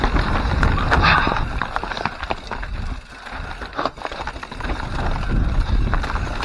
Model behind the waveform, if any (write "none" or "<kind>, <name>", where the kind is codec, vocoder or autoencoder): none